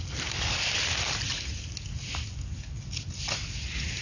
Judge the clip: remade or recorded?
recorded